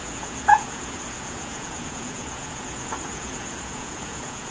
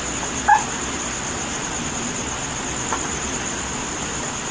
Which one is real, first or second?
second